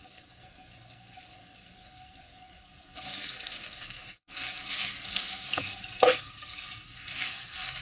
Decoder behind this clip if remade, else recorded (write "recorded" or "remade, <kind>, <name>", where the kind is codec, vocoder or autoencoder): remade, codec, SNAC